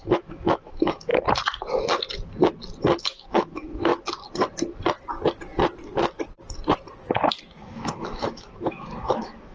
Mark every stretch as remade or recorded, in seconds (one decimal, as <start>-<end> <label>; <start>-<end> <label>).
0.0-1.1 remade; 1.1-3.0 recorded; 3.0-3.9 remade; 3.9-7.4 recorded; 7.4-9.5 remade